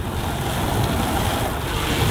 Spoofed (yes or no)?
no